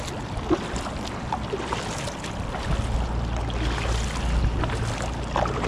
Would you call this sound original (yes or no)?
yes